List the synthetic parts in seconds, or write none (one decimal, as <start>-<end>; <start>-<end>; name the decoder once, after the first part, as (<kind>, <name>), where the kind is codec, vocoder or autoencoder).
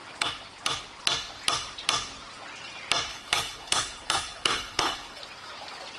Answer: 3.1-5.2 (codec, HILCodec)